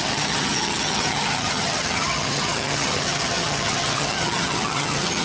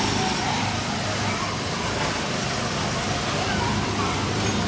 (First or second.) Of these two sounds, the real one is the second